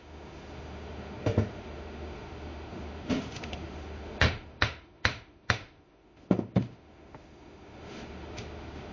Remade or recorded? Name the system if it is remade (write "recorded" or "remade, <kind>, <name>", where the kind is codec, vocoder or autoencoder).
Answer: remade, autoencoder, DAC-VAE